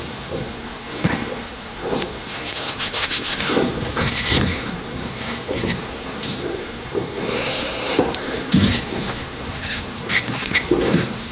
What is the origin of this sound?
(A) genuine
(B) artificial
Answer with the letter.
B